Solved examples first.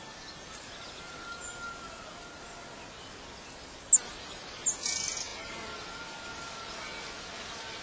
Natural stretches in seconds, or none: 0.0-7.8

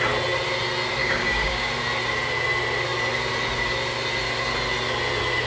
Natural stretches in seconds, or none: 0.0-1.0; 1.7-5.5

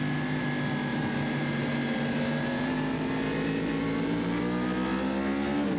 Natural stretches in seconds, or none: 0.0-0.9; 4.4-5.8

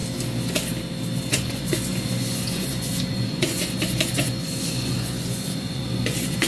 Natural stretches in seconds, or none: 0.0-1.3